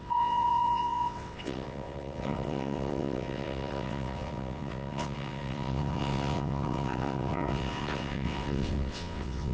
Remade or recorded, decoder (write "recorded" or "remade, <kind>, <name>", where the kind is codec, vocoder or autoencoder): remade, vocoder, WaveNeXt